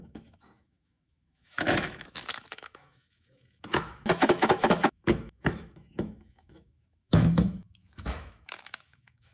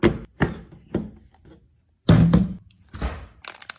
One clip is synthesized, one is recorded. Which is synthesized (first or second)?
first